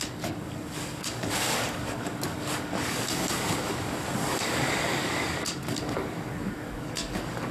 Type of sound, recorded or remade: remade